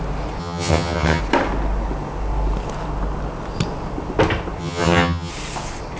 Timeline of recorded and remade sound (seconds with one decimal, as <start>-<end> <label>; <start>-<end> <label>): 0.0-0.4 recorded; 0.4-1.2 remade; 1.2-4.6 recorded; 4.6-5.3 remade; 5.3-6.0 recorded

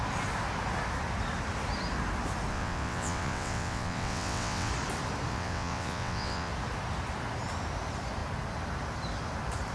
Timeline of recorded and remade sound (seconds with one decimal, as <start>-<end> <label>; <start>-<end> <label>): 0.0-2.5 recorded; 2.5-4.7 remade; 4.7-5.3 recorded; 5.3-6.5 remade; 6.5-9.7 recorded

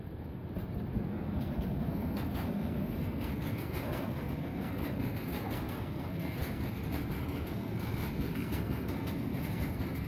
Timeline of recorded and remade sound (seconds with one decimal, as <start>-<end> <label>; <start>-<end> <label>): 0.0-0.4 remade; 0.4-0.9 recorded; 0.9-10.1 remade

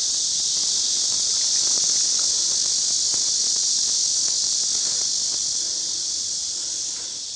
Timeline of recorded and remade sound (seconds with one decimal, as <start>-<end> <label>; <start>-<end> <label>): 0.0-7.4 recorded

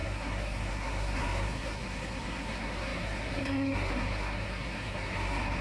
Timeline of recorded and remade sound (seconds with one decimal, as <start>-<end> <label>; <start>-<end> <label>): 0.0-5.6 remade

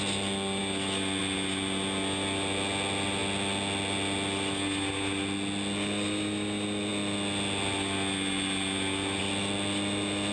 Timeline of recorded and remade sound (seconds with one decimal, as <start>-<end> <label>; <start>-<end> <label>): 0.0-10.3 recorded

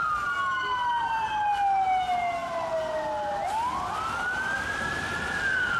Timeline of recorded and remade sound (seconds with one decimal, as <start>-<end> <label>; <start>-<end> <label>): 0.0-5.8 recorded